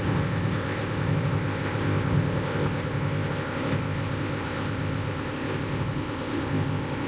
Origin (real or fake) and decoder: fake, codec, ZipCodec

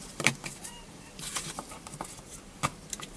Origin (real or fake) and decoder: fake, vocoder, BigVGAN v2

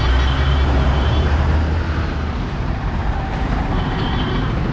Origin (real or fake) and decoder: fake, vocoder, BigVGAN v2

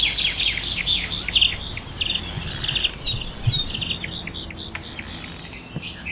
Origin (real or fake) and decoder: real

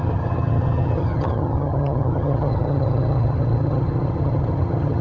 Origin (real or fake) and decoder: fake, vocoder, HiFi-GAN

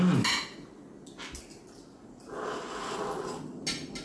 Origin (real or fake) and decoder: real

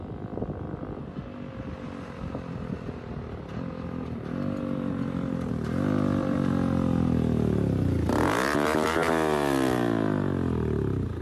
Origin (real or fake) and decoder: real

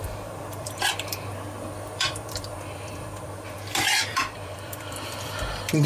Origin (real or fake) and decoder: fake, vocoder, BigVGAN v2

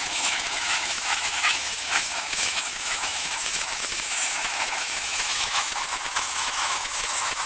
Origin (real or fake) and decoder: fake, autoencoder, DAC-VAE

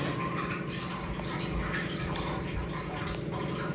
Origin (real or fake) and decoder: real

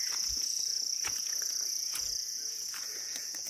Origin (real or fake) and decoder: fake, vocoder, Vocos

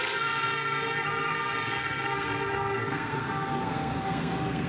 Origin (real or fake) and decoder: fake, codec, SNAC